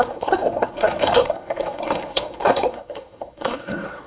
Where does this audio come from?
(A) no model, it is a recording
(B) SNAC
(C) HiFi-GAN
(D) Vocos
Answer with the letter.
B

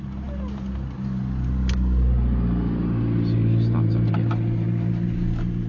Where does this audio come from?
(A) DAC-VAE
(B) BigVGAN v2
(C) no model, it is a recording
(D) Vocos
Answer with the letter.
C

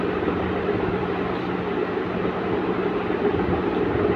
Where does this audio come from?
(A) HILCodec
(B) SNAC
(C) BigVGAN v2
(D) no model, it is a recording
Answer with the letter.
D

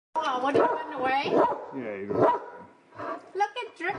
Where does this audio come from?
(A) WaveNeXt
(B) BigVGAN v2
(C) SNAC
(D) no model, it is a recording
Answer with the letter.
D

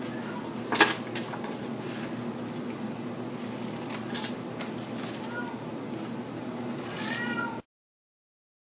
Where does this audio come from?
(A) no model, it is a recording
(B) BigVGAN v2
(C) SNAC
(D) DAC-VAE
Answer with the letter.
A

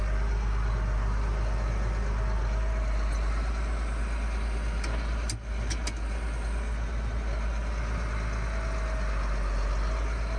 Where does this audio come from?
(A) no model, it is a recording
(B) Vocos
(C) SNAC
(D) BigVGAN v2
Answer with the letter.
A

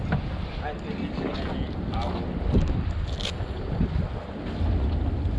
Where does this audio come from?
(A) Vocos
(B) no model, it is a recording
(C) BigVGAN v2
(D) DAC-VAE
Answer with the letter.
B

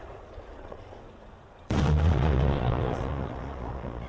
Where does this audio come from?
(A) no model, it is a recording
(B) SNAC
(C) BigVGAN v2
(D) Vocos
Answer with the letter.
D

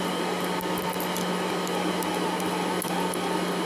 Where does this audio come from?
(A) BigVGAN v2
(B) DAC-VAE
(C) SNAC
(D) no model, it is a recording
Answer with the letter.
D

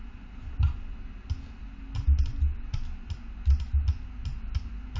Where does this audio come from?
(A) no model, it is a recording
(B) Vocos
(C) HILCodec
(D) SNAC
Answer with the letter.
A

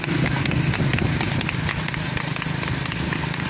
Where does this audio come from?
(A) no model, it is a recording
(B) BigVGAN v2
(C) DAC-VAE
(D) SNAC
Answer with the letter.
A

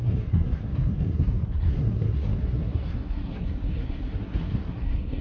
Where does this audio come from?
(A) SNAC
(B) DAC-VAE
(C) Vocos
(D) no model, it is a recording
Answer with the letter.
A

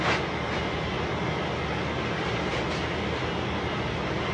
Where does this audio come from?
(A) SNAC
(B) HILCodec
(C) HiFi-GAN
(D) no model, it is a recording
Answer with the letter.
D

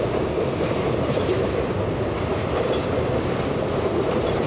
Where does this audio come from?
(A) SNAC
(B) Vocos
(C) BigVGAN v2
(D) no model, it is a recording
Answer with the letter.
C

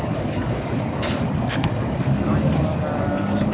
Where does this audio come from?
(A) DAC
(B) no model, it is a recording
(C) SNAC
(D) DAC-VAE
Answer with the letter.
A